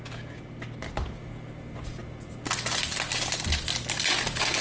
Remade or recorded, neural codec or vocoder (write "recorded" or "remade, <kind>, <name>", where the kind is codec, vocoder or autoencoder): recorded